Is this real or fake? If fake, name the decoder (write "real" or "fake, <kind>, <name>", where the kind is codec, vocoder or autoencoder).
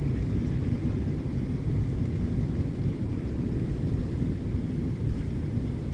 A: real